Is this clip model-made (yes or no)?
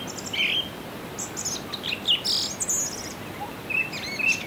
no